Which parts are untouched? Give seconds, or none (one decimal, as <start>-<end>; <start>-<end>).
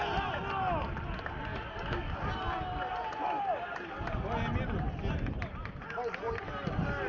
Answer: 0.0-1.5; 2.3-7.1